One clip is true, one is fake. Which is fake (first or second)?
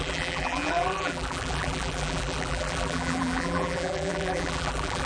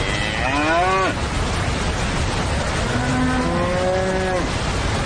first